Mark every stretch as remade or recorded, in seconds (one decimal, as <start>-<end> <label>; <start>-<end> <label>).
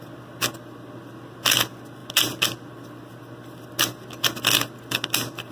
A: 0.0-5.5 recorded